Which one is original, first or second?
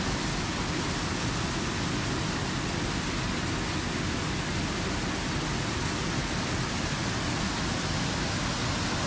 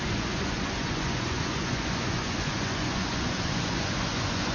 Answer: first